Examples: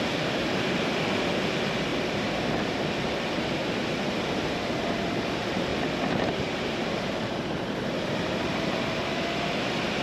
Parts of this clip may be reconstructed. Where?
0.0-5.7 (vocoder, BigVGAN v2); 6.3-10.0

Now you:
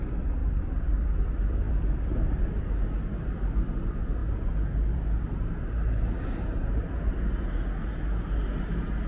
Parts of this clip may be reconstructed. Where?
0.4-2.6 (vocoder, BigVGAN v2)

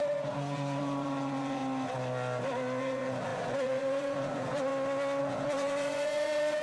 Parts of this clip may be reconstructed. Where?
0.0-1.6 (vocoder, Vocos); 2.8-4.7; 5.2-6.6

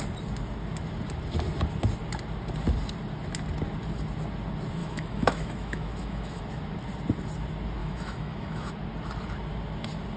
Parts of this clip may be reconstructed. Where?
4.8-6.4 (autoencoder, DAC-VAE); 7.8-8.7

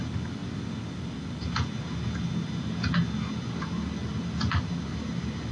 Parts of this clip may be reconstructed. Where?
none